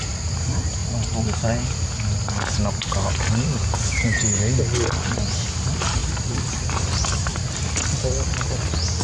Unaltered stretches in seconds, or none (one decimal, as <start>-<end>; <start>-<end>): 0.8-5.6; 7.3-9.0